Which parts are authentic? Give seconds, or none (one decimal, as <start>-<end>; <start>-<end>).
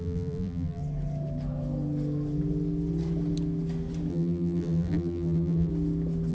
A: 0.8-4.1; 5.7-6.3